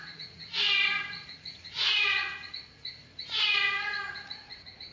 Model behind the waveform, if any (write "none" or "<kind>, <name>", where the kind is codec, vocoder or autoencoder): vocoder, Vocos